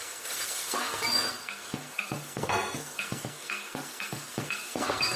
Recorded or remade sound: remade